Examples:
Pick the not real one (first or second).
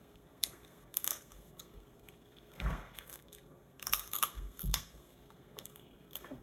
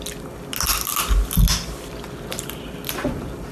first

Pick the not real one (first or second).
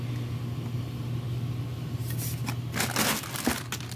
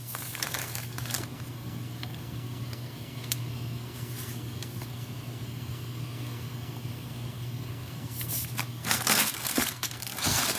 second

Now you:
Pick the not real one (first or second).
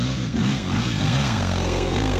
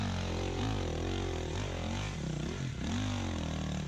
first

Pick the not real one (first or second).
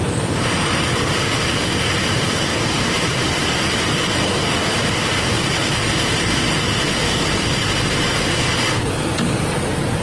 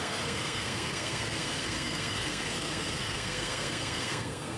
second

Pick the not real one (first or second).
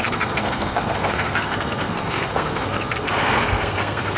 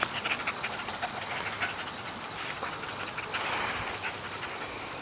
first